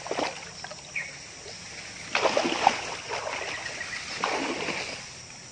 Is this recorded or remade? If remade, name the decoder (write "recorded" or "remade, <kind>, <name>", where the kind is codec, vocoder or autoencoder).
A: recorded